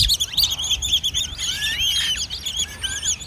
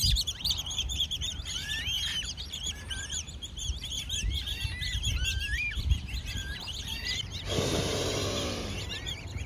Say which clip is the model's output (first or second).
second